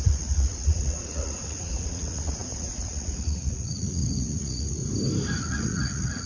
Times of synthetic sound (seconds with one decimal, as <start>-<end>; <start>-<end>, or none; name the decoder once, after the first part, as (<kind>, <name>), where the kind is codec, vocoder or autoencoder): 0.0-4.8 (vocoder, Vocos); 5.4-6.3